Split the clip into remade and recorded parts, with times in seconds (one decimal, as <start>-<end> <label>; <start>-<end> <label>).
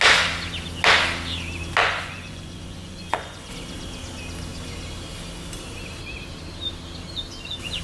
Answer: 0.0-1.8 recorded; 1.8-3.5 remade; 3.5-7.8 recorded